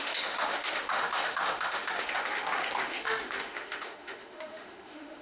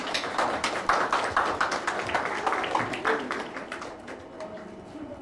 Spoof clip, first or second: first